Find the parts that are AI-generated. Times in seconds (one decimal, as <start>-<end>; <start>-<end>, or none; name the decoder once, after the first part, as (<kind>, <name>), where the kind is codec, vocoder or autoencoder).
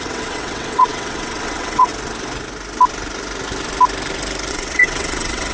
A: 0.0-1.9 (vocoder, WaveNeXt); 4.5-5.5